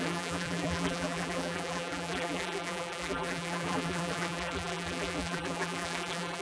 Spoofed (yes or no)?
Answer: yes